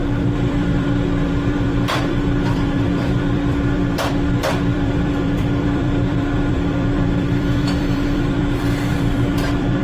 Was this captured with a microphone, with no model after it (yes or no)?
no